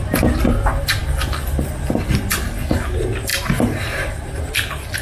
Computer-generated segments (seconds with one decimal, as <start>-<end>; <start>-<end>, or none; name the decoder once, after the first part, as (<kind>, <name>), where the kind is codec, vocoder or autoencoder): 3.3-4.4 (vocoder, BigVGAN v2)